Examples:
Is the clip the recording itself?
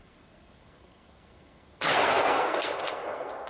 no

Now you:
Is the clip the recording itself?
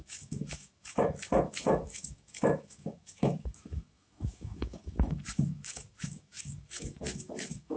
no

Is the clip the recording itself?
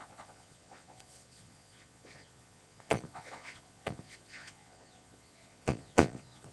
no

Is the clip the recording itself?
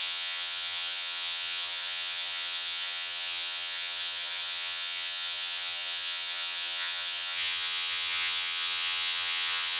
no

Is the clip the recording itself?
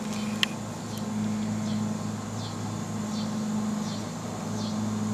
yes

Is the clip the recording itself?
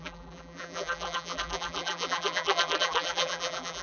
no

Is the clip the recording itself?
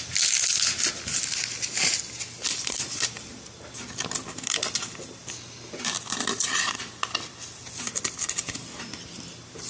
yes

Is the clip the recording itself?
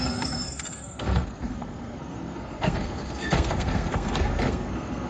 no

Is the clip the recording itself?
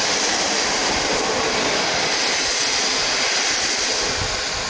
yes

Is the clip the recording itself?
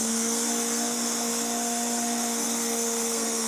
no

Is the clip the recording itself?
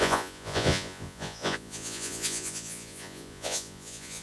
no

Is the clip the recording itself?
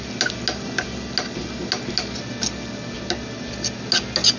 yes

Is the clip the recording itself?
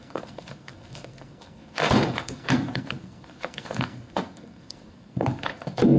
no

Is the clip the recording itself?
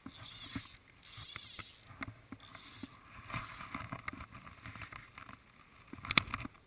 yes